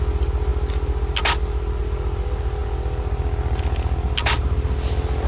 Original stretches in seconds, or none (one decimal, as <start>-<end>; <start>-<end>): 0.0-5.3

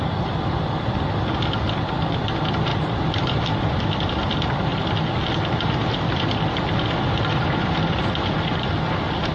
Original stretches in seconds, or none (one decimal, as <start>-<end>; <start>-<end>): 0.0-2.7; 3.5-9.3

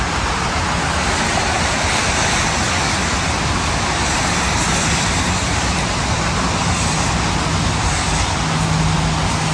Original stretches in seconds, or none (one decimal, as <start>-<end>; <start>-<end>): 0.0-9.5

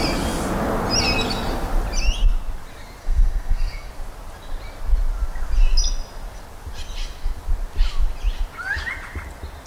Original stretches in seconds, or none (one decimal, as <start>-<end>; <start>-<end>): 0.0-3.0; 3.9-9.7

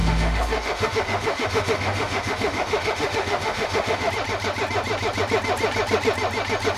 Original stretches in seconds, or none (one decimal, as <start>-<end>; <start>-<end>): 4.1-6.8

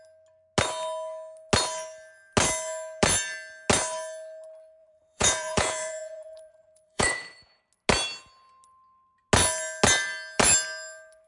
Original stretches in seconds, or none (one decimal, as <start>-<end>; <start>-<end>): 0.0-4.8; 7.6-11.3